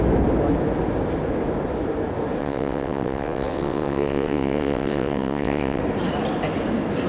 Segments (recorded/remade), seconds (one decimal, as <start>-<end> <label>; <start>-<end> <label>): 0.0-2.4 recorded; 2.4-5.8 remade; 5.8-7.1 recorded

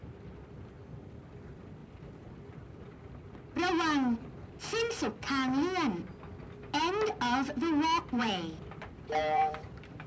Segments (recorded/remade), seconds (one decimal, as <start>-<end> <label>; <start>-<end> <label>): 0.0-1.8 recorded; 1.8-3.1 remade; 3.1-8.2 recorded; 8.2-10.1 remade

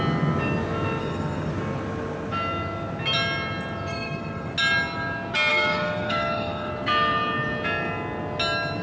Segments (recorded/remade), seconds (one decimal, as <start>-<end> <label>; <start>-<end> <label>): 0.0-1.0 recorded; 1.0-1.5 remade; 1.5-3.9 recorded; 3.9-4.5 remade; 4.5-5.5 recorded; 5.5-6.7 remade; 6.7-8.8 recorded

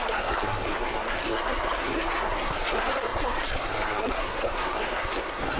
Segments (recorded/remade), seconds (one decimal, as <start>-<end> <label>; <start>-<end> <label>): 0.0-5.6 remade

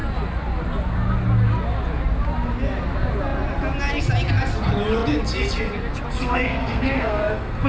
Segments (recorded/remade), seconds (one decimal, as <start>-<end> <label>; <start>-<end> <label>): 0.0-6.2 recorded; 6.2-7.7 remade

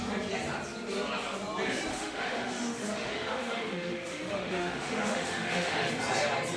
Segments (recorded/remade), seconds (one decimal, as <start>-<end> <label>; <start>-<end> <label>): 0.0-1.9 recorded; 1.9-5.9 remade; 5.9-6.6 recorded

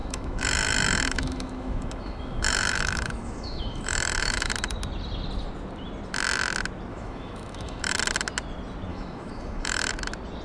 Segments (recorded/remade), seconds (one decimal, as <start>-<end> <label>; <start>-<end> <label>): 0.0-4.5 remade; 4.5-6.9 recorded; 6.9-7.9 remade; 7.9-8.9 recorded; 8.9-9.9 remade; 9.9-10.4 recorded

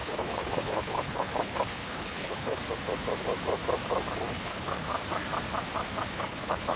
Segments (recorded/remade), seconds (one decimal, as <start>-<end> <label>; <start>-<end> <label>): 0.0-2.6 remade; 2.6-4.3 recorded; 4.3-4.9 remade; 4.9-6.1 recorded; 6.1-6.8 remade